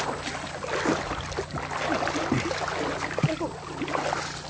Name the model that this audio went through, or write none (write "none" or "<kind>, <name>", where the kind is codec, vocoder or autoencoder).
none